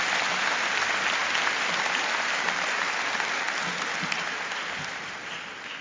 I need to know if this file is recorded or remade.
recorded